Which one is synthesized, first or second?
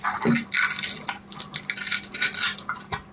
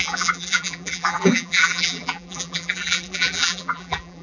second